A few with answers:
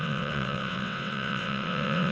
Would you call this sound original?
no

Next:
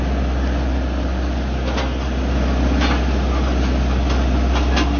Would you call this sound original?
yes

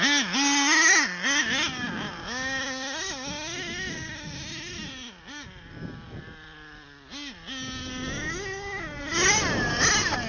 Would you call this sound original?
yes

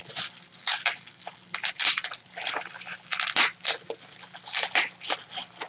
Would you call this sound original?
yes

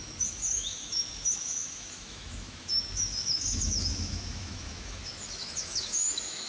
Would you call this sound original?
no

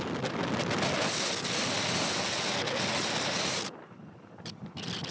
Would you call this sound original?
yes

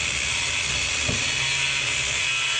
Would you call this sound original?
yes